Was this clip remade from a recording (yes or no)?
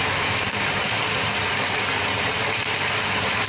yes